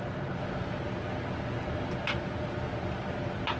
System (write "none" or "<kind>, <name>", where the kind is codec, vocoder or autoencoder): none